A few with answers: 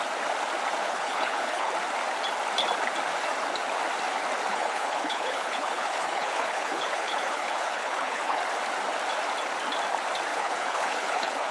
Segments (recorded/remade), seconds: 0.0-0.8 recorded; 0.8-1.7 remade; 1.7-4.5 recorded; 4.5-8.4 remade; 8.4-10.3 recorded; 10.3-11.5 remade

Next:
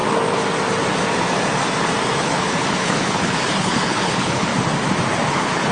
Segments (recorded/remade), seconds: 0.0-2.2 recorded; 2.2-4.5 remade; 4.5-5.3 recorded; 5.3-5.7 remade

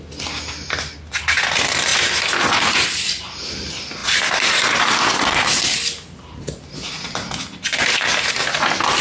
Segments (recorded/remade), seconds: 0.0-9.0 recorded